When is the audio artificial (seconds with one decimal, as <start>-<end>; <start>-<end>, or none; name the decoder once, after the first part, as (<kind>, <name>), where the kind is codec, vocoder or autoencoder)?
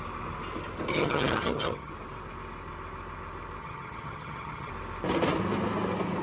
0.9-1.9 (vocoder, HiFi-GAN); 3.6-4.7